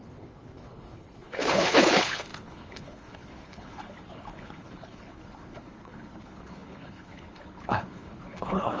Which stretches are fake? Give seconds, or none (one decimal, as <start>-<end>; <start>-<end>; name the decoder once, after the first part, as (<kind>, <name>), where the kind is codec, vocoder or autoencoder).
0.0-8.8 (codec, HILCodec)